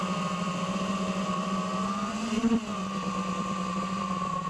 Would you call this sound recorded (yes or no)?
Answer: no